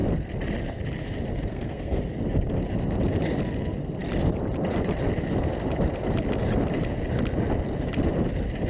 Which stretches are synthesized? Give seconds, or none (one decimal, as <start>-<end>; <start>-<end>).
1.5-2.0